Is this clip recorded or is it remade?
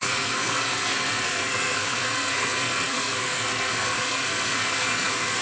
remade